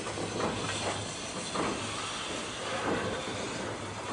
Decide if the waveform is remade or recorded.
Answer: recorded